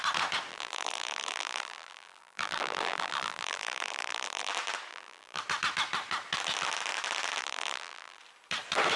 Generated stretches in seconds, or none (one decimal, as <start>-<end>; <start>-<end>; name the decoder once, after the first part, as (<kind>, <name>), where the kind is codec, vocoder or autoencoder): 0.5-4.5 (vocoder, BigVGAN v2); 4.9-5.4; 7.4-8.2

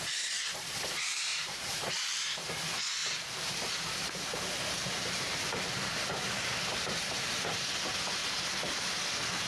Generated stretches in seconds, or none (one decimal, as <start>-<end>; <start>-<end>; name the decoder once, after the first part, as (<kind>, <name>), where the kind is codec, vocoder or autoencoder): 1.3-2.5 (vocoder, BigVGAN v2); 3.0-3.6; 4.8-7.6

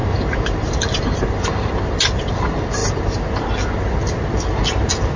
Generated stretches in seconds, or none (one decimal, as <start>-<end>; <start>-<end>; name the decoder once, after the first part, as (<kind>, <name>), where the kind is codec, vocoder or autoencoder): 0.0-1.7 (vocoder, BigVGAN v2); 2.8-3.4

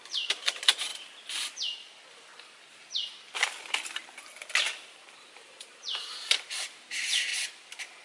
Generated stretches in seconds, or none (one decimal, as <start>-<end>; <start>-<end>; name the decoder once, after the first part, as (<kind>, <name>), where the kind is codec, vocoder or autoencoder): 0.0-0.9 (vocoder, BigVGAN v2); 5.1-7.3